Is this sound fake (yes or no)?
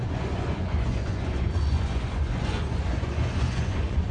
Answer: yes